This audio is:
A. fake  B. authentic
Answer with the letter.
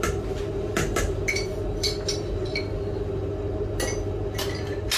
B